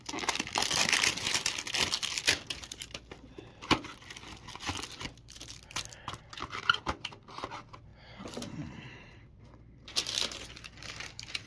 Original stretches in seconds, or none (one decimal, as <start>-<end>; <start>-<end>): 0.0-11.5